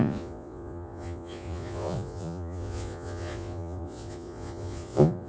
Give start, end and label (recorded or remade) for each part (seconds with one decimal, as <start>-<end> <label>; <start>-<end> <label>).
0.0-5.3 remade